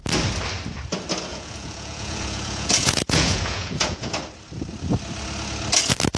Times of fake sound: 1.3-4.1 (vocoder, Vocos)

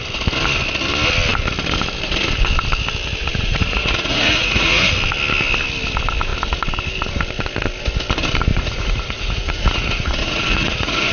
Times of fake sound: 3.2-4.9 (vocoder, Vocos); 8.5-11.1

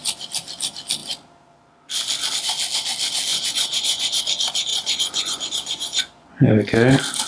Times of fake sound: 3.3-4.2 (vocoder, Vocos); 4.7-6.5

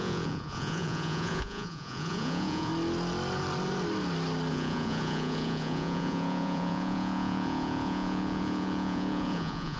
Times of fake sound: 0.0-2.7 (vocoder, Vocos); 4.5-9.8

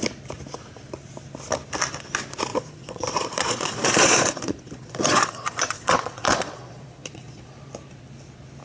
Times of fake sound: 2.5-7.5 (vocoder, Vocos)